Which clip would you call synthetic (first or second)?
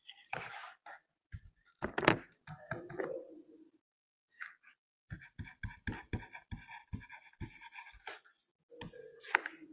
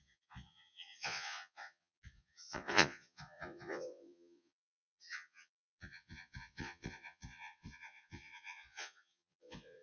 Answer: second